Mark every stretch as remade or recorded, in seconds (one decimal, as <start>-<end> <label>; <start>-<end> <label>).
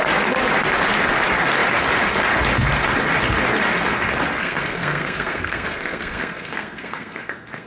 0.0-4.4 recorded; 4.4-7.7 remade